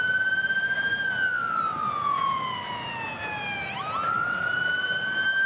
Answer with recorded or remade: recorded